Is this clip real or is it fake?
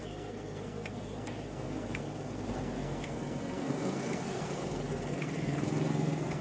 fake